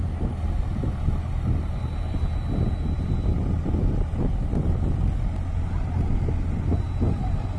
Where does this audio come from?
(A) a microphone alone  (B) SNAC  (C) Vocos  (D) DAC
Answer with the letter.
A